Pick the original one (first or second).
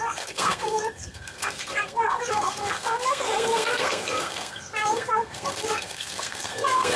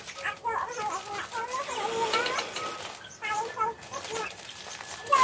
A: second